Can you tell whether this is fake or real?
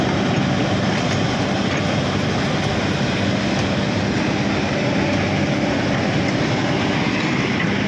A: real